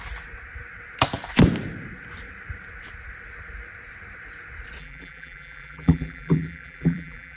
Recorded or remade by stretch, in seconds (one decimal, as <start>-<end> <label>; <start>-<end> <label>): 0.0-4.8 recorded; 4.8-7.4 remade